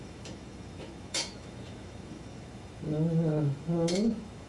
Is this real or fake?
fake